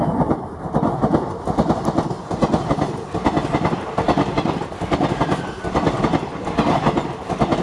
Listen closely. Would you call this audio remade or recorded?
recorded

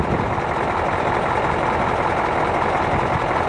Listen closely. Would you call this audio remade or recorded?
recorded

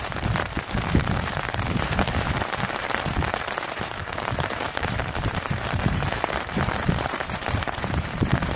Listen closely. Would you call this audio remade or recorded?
remade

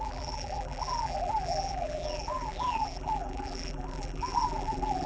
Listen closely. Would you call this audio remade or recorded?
remade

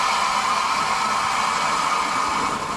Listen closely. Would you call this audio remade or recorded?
recorded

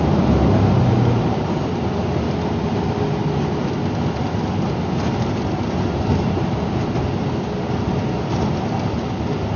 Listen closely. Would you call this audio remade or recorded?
recorded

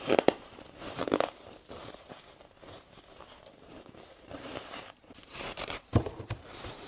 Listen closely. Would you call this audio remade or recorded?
remade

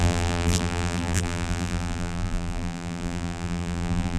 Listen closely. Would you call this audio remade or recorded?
remade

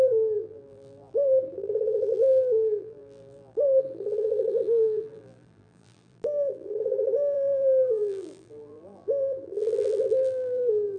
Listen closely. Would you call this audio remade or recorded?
remade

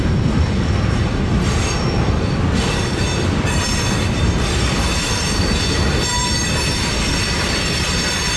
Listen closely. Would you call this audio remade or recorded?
remade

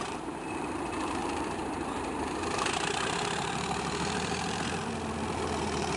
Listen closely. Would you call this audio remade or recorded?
remade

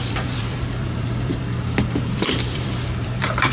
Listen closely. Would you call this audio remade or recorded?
remade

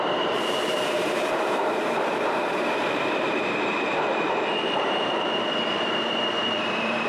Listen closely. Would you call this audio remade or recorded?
remade